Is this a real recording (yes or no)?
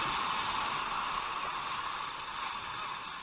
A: yes